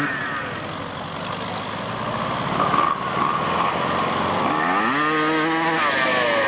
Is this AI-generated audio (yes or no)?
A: no